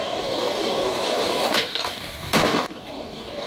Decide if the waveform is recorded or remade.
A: remade